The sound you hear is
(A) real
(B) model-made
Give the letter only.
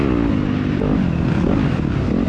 A